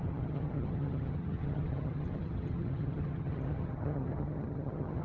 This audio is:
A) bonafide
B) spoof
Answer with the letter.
B